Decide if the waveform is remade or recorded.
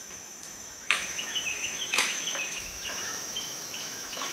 remade